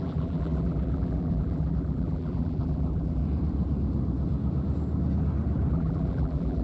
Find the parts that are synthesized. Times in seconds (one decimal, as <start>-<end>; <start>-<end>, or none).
0.0-3.2; 5.7-6.6